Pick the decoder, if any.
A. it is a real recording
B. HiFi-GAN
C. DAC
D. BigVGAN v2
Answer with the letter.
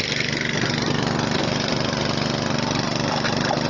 A